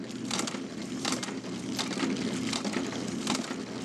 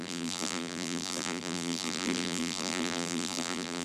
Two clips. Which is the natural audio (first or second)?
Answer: first